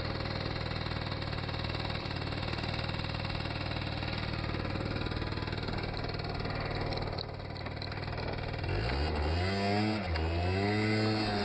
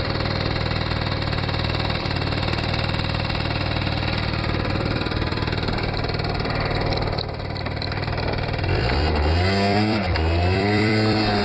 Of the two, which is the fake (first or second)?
second